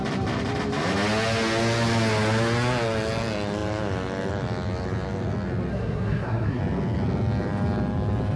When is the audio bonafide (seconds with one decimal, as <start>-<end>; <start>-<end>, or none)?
0.0-5.7; 6.6-8.4